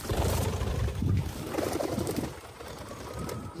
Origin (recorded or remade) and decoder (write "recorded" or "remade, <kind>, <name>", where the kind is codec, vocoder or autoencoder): recorded